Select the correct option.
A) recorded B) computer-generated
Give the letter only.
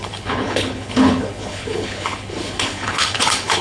B